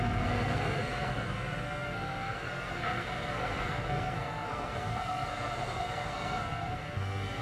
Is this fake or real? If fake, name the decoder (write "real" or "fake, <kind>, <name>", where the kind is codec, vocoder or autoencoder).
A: fake, codec, SNAC